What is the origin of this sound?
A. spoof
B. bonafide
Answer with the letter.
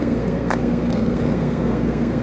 A